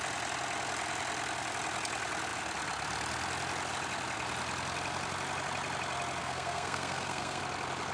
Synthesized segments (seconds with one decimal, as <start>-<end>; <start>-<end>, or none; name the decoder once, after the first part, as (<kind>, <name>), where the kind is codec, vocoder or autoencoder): 6.2-7.4 (codec, SNAC)